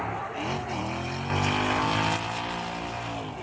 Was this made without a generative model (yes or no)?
yes